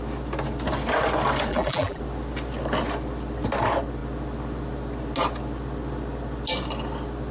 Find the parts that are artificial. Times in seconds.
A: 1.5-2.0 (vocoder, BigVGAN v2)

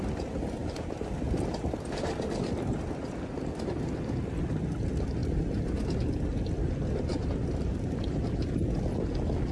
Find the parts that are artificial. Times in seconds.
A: 0.6-3.8 (vocoder, BigVGAN v2); 7.1-7.9

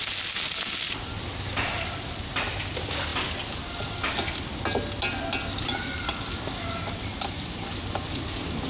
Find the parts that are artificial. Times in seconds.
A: none

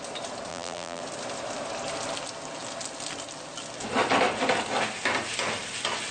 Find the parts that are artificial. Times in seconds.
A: 0.5-1.0 (vocoder, BigVGAN v2)